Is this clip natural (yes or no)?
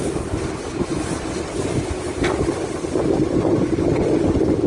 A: yes